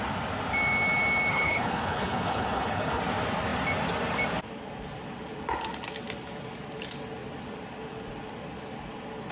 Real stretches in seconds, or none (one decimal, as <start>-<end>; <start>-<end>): 0.0-1.3; 3.0-9.3